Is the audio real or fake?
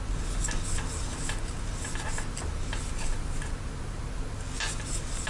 real